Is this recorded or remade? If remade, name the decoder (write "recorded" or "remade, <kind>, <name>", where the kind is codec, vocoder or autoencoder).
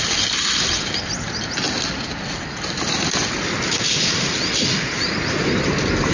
recorded